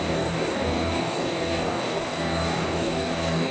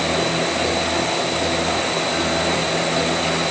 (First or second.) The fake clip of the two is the first